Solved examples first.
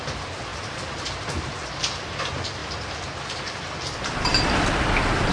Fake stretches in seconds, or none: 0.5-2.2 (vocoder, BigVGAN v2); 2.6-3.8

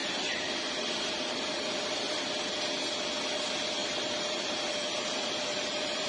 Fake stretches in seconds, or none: 3.8-6.1 (vocoder, BigVGAN v2)

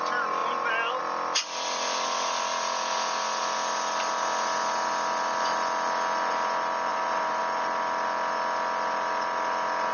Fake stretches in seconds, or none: 6.9-7.4 (vocoder, BigVGAN v2)

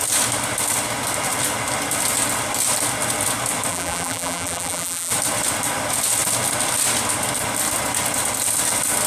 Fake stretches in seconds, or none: 3.7-5.1 (vocoder, BigVGAN v2)

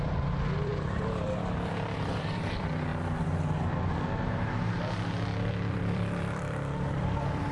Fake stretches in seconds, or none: 0.0-2.9 (vocoder, BigVGAN v2); 5.7-7.5

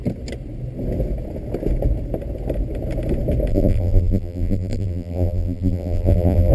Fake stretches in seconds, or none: 3.5-6.5 (vocoder, BigVGAN v2)

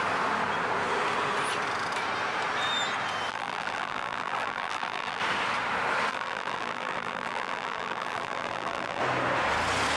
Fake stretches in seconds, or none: 3.3-5.2 (vocoder, BigVGAN v2); 6.1-9.0